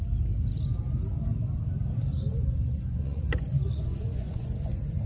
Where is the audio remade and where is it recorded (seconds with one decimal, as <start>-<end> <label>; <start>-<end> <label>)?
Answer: 0.0-2.1 recorded; 2.1-5.1 remade